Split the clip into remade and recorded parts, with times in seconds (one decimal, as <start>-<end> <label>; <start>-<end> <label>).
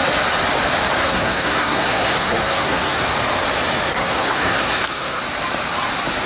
0.0-1.0 recorded; 1.0-3.0 remade; 3.0-3.9 recorded; 3.9-5.2 remade; 5.2-6.3 recorded